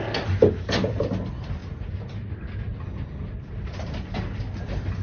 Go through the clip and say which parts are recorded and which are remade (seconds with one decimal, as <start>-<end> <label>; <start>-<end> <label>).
0.0-5.0 recorded